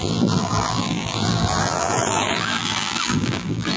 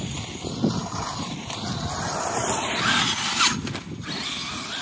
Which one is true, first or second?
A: second